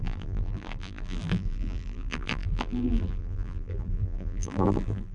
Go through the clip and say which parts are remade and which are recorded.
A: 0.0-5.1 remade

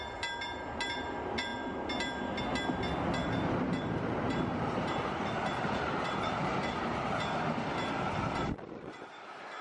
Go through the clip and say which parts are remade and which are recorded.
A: 0.0-3.2 recorded; 3.2-7.0 remade; 7.0-9.6 recorded

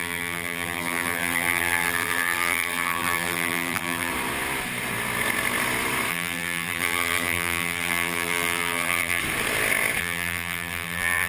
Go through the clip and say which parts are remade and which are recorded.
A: 0.0-4.1 remade; 4.1-6.1 recorded; 6.1-9.2 remade; 9.2-10.0 recorded; 10.0-11.3 remade

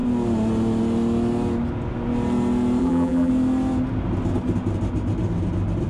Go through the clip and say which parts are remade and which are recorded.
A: 0.0-2.8 recorded; 2.8-3.3 remade; 3.3-5.9 recorded

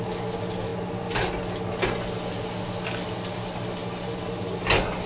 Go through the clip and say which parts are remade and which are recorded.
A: 0.0-5.1 recorded

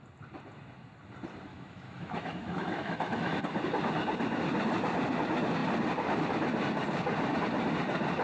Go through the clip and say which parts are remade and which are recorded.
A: 0.0-1.5 recorded; 1.5-3.4 remade; 3.4-8.2 recorded

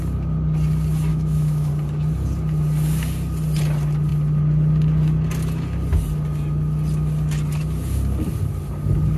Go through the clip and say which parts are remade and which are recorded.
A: 0.0-1.1 recorded; 1.1-1.7 remade; 1.7-9.2 recorded

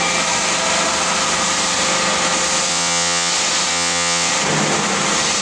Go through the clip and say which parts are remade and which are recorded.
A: 0.0-2.7 recorded; 2.7-3.3 remade; 3.3-3.7 recorded; 3.7-4.3 remade; 4.3-5.4 recorded